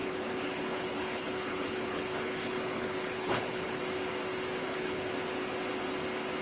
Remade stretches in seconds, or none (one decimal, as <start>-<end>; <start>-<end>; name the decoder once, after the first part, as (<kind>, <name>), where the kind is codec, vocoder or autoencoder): 0.0-3.8 (codec, HILCodec); 4.6-5.1